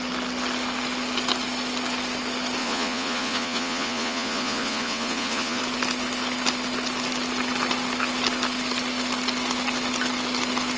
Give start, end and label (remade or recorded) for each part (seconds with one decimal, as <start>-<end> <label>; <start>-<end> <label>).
0.0-2.6 recorded; 2.6-5.6 remade; 5.6-10.8 recorded